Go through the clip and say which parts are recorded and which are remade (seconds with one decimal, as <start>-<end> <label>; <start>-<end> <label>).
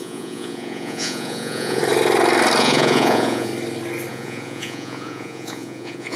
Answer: 0.0-1.8 remade; 1.8-2.6 recorded; 2.6-3.5 remade; 3.5-4.1 recorded; 4.1-6.2 remade